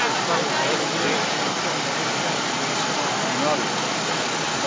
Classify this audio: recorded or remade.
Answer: recorded